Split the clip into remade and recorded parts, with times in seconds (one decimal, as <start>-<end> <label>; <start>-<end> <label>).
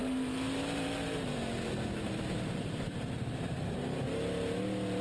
0.0-3.0 remade; 3.0-5.0 recorded